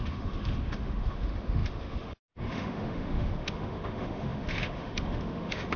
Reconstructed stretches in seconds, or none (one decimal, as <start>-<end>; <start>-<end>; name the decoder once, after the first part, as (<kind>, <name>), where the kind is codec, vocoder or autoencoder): 0.0-5.8 (autoencoder, DAC-VAE)